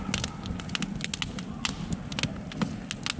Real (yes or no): yes